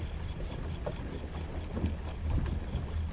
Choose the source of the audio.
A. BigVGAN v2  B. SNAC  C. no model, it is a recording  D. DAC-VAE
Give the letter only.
C